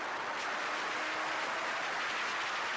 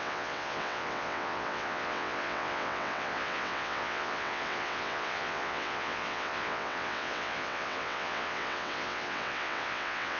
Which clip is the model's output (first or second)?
second